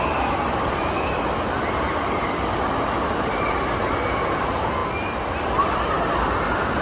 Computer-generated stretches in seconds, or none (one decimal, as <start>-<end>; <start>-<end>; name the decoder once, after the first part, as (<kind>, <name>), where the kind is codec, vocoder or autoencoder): none